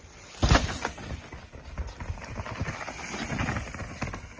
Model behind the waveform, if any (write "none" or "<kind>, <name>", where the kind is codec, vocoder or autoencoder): none